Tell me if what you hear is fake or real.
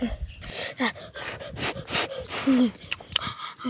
real